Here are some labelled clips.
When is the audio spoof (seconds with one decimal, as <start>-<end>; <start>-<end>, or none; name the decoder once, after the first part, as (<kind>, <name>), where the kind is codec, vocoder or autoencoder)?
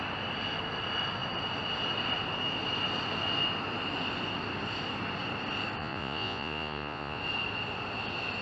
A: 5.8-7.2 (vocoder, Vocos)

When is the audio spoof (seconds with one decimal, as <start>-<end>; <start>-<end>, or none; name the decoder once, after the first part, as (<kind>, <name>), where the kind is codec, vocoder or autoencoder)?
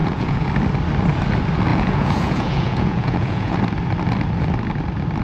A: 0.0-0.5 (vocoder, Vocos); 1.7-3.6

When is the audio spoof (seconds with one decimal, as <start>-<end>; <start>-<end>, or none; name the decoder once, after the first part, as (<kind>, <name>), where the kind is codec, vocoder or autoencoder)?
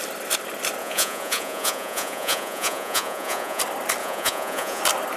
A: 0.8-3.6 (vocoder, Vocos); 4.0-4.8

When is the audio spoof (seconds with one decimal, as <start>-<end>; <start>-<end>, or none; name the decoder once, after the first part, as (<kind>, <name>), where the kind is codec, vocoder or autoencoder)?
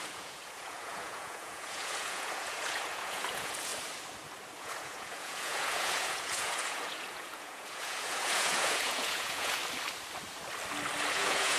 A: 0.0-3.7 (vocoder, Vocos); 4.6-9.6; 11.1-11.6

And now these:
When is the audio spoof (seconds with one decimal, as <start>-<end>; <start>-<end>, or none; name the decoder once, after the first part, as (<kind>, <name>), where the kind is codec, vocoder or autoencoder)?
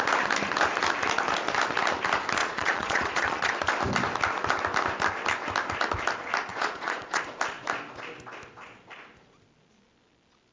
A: 2.4-3.5 (vocoder, Vocos); 6.5-7.2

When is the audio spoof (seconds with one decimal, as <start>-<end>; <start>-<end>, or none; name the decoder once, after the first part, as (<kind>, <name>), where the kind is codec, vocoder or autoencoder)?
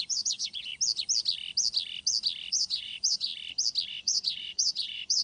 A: 0.0-0.7 (vocoder, Vocos); 2.5-3.3; 3.9-5.2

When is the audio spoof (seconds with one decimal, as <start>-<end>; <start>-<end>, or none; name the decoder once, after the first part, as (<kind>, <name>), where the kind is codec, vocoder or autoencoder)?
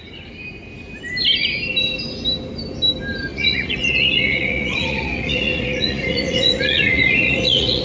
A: 3.3-7.8 (vocoder, Vocos)